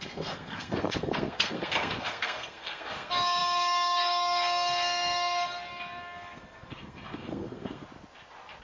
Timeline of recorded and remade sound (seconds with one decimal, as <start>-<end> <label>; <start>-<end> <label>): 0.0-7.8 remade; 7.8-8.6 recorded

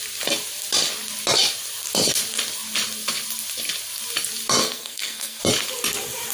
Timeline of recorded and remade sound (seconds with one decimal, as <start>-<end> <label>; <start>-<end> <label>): 0.0-4.6 recorded; 4.6-5.4 remade; 5.4-6.3 recorded

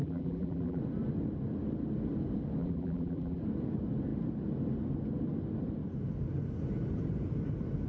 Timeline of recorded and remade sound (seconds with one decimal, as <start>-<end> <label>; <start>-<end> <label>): 0.0-0.8 remade; 0.8-2.6 recorded; 2.6-3.4 remade; 3.4-7.9 recorded